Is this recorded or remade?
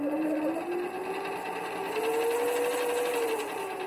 recorded